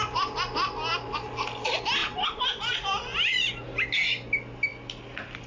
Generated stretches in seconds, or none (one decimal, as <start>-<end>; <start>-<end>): 2.0-3.5